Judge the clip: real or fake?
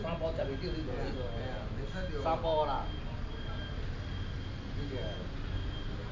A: real